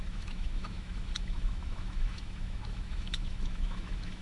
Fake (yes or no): yes